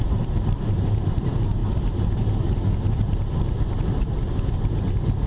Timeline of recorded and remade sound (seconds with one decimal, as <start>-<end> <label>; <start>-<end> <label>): 0.0-1.6 remade; 1.6-2.9 recorded; 2.9-5.3 remade

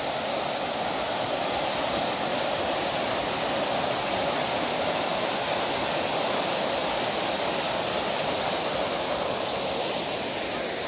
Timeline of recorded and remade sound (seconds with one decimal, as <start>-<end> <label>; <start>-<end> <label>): 0.0-2.3 recorded; 2.3-2.9 remade; 2.9-10.9 recorded

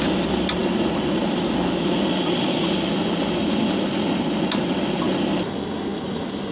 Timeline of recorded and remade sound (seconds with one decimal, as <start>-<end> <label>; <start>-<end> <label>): 0.0-0.6 recorded; 0.6-1.5 remade; 1.5-6.5 recorded

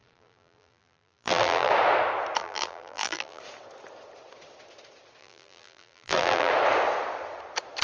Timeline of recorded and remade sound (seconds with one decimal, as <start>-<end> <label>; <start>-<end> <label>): 0.0-1.7 remade; 1.7-2.4 recorded; 2.4-3.4 remade; 3.4-5.2 recorded; 5.2-6.5 remade; 6.5-7.8 recorded

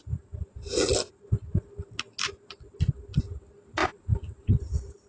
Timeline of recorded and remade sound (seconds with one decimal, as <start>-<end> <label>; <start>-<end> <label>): 0.0-3.8 recorded; 3.8-4.5 remade; 4.5-5.1 recorded

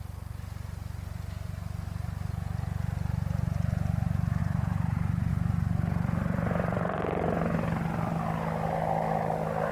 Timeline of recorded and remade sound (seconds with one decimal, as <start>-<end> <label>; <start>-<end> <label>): 0.0-4.4 recorded; 4.4-5.3 remade; 5.3-9.7 recorded

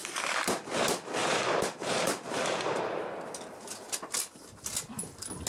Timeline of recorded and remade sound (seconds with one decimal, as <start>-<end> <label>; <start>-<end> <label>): 0.0-0.7 remade; 0.7-1.2 recorded; 1.2-2.8 remade; 2.8-5.5 recorded

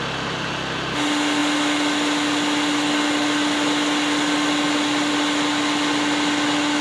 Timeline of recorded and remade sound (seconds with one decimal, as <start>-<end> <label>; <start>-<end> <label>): 0.0-6.8 recorded